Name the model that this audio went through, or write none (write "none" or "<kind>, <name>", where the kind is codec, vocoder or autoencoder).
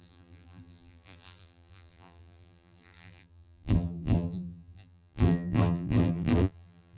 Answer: vocoder, BigVGAN v2